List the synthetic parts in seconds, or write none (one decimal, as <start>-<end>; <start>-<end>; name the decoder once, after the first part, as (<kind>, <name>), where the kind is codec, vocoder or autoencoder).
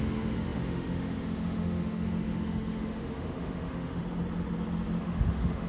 0.0-4.0 (autoencoder, DAC-VAE); 5.0-5.7